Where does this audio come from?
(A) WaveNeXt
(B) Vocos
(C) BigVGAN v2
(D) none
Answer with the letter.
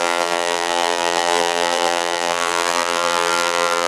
C